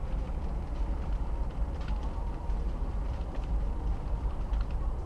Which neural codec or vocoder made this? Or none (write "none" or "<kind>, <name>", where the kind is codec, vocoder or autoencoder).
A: vocoder, BigVGAN v2